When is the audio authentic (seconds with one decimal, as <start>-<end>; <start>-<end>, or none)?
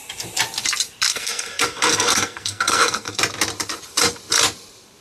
0.0-1.1; 3.2-5.0